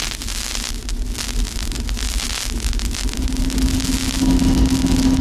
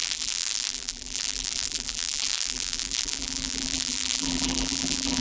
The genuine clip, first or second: first